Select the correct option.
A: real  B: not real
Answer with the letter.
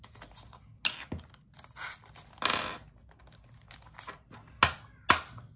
A